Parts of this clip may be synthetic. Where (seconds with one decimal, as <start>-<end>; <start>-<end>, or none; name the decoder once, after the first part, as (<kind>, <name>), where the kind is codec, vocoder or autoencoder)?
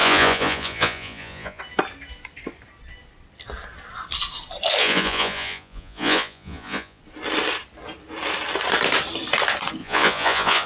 0.0-1.6 (vocoder, Vocos); 4.8-7.0; 9.8-10.7